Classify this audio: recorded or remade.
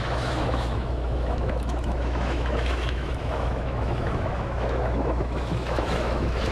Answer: remade